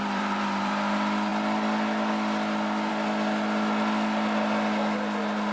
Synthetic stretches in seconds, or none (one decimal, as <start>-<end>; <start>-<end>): 0.0-0.7